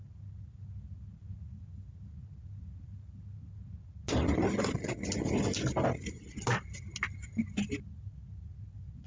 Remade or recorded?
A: recorded